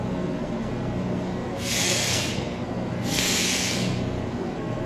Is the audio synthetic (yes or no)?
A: yes